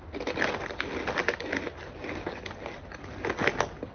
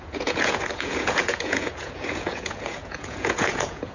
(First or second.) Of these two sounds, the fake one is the second